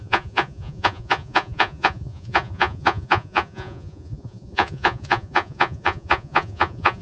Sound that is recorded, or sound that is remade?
remade